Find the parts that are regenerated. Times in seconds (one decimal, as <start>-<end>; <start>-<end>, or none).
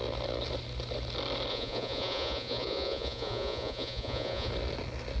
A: 1.5-4.5